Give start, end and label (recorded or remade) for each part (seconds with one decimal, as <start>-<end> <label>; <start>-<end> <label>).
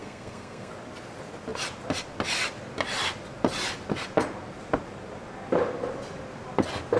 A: 0.0-0.7 remade; 0.7-7.0 recorded